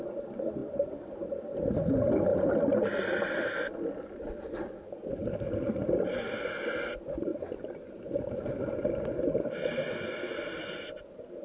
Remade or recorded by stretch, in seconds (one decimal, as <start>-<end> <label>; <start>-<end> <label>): 0.0-0.6 recorded; 0.6-1.2 remade; 1.2-2.3 recorded; 2.3-4.0 remade; 4.0-11.4 recorded